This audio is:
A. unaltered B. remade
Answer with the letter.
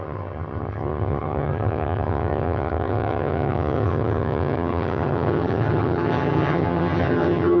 B